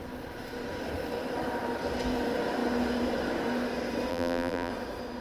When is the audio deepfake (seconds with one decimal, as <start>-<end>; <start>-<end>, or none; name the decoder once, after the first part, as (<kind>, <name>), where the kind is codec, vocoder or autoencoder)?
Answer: 4.1-4.7 (vocoder, BigVGAN v2)